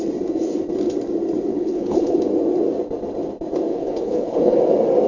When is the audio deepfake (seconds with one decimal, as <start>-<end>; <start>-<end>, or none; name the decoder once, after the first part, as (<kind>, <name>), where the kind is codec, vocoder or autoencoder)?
1.5-2.2 (codec, HILCodec); 3.7-4.6